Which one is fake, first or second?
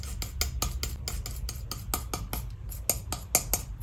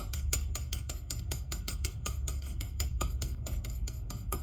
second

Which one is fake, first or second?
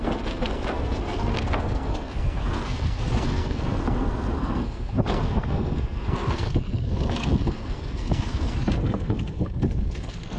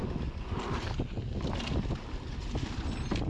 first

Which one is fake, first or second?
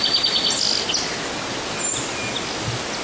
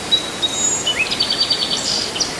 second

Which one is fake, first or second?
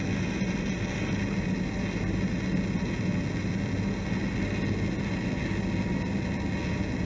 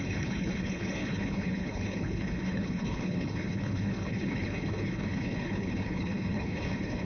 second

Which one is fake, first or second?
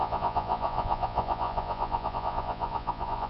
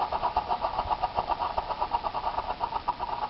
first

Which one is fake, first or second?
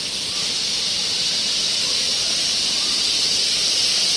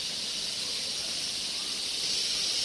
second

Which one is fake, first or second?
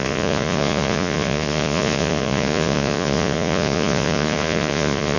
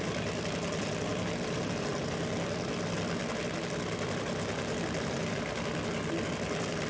first